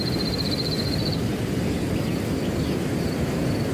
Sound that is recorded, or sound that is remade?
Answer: remade